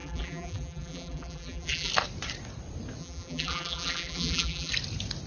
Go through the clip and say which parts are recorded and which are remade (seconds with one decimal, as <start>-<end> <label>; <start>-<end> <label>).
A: 0.0-1.9 remade; 1.9-3.0 recorded; 3.0-4.7 remade; 4.7-5.3 recorded